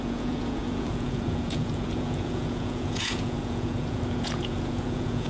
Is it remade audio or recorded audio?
remade